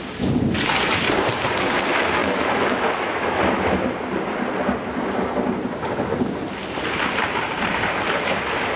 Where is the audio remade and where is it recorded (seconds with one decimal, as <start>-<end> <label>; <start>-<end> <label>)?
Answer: 0.0-2.2 recorded; 2.2-3.4 remade; 3.4-8.8 recorded